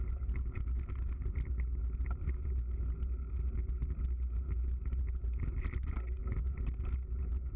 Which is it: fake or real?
real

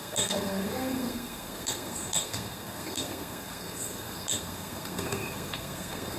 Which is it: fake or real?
fake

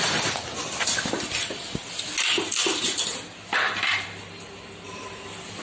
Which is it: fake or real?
real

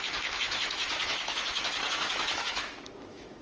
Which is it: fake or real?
fake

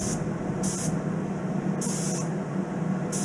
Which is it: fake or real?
real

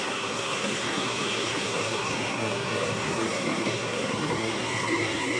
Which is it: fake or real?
fake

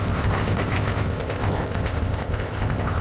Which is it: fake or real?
fake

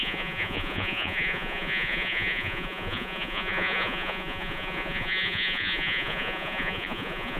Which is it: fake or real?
fake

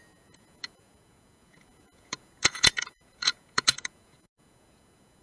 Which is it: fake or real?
fake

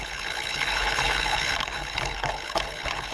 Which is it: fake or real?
fake